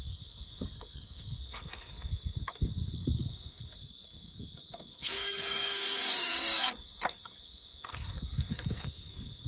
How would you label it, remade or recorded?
remade